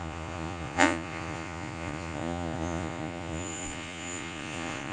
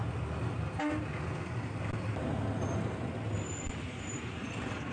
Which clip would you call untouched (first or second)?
second